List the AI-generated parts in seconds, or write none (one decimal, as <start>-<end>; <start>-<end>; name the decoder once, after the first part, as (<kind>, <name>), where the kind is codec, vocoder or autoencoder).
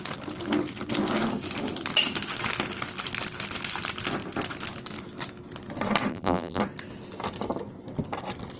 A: 6.1-6.6 (vocoder, BigVGAN v2)